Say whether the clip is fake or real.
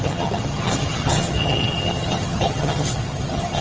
fake